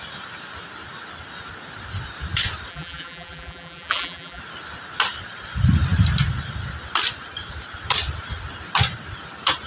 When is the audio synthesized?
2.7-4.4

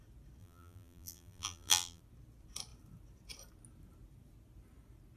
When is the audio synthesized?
0.4-2.0

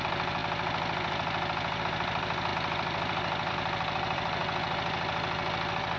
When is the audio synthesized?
0.0-0.4; 1.8-4.4

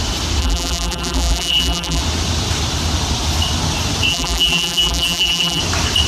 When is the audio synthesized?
0.4-2.0; 4.1-5.6

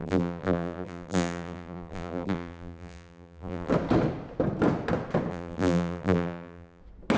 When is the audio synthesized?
0.0-3.7; 5.3-6.8

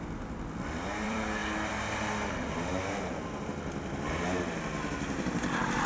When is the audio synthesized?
0.0-5.9

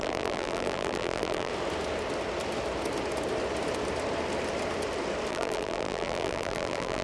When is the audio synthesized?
0.0-1.5; 5.3-7.0

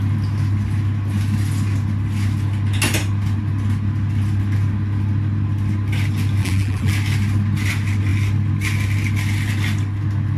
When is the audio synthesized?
6.4-6.9